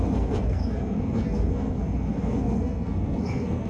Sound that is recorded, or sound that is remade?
remade